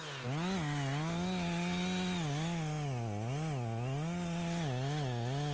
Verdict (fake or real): real